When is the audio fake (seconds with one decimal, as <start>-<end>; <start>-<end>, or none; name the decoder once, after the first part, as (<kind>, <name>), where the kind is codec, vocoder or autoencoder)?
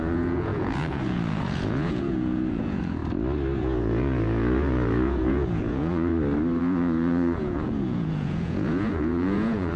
0.0-3.0 (vocoder, Vocos); 3.6-6.1; 6.6-9.8